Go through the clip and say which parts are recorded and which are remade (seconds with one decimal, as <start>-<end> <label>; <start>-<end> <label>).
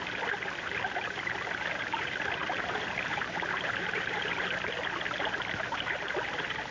0.0-2.4 recorded; 2.4-4.3 remade; 4.3-6.7 recorded